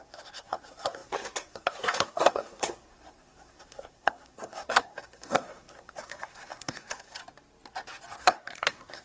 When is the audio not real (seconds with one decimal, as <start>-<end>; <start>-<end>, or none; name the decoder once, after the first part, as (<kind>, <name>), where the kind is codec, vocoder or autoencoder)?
0.0-7.2 (codec, SNAC); 8.2-9.0